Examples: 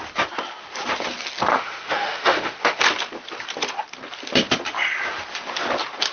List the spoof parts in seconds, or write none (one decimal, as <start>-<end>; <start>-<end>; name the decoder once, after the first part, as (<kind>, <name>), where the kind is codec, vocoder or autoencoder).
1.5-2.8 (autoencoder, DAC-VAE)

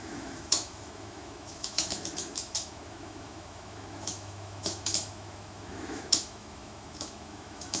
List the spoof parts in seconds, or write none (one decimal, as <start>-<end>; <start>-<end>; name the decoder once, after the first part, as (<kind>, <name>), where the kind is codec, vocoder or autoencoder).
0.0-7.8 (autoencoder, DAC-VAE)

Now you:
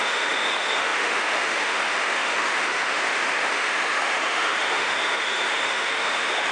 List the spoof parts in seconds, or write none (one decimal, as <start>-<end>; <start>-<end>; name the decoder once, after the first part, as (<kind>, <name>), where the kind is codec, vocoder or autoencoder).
0.0-6.5 (autoencoder, DAC-VAE)

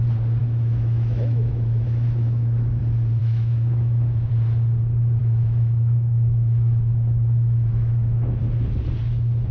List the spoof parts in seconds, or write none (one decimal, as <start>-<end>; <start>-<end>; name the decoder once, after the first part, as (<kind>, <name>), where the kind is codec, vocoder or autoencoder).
0.4-2.8 (autoencoder, DAC-VAE); 3.2-4.3; 5.2-8.4

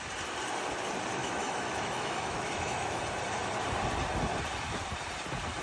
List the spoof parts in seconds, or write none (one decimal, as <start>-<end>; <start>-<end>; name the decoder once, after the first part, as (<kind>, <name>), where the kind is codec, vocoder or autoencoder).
1.2-3.0 (autoencoder, DAC-VAE)